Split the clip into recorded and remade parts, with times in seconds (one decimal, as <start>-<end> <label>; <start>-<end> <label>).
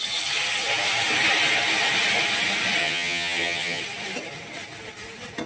0.0-2.8 recorded; 2.8-3.8 remade; 3.8-5.5 recorded